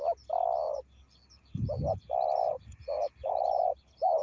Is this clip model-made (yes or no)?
no